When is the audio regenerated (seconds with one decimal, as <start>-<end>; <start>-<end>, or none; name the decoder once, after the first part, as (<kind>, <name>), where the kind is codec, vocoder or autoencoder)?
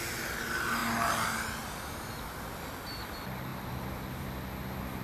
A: 3.5-4.5 (vocoder, BigVGAN v2)